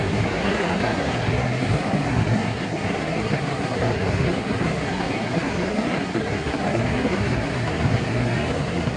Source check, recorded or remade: remade